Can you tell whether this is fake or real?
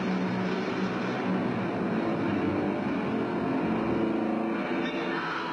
real